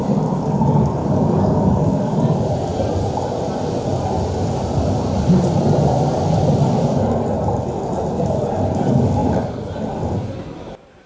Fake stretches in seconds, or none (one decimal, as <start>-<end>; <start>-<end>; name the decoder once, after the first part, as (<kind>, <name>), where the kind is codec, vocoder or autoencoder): 1.0-2.2 (codec, DAC)